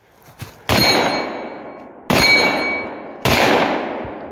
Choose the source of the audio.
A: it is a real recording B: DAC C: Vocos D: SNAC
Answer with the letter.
A